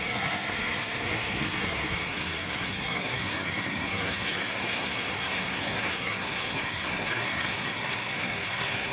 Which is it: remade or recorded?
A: remade